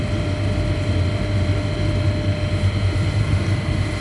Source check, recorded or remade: recorded